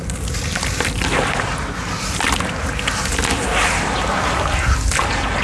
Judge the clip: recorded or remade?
recorded